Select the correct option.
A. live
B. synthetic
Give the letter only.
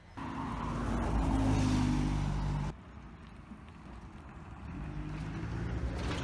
A